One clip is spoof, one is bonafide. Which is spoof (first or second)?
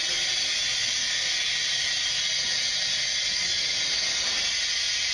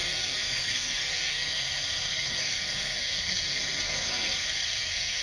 second